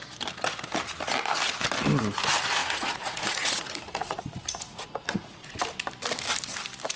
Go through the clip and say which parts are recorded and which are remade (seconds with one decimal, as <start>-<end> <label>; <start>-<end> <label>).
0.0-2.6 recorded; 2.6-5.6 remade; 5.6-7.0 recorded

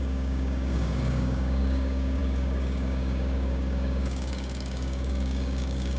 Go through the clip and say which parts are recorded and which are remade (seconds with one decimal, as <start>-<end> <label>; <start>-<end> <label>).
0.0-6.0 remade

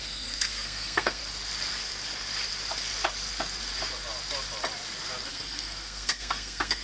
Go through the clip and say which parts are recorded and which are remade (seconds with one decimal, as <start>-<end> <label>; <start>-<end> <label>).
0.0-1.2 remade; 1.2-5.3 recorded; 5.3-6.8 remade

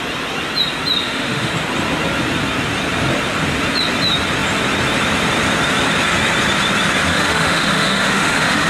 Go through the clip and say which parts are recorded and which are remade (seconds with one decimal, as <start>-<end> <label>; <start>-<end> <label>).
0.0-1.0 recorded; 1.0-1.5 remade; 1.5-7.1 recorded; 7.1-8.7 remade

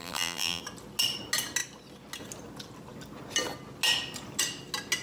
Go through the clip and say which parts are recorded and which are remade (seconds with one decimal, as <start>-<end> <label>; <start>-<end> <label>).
0.0-0.6 remade; 0.6-5.0 recorded